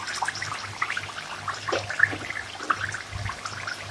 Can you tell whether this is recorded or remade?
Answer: recorded